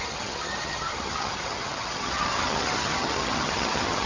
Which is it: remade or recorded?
remade